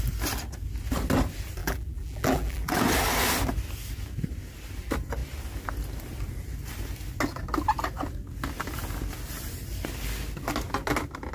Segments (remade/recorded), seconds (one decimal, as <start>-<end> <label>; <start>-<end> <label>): 0.0-1.6 recorded; 1.6-2.7 remade; 2.7-11.3 recorded